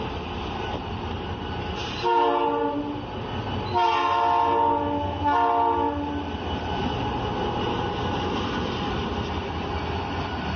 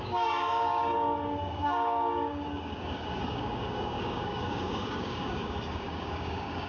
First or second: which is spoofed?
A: second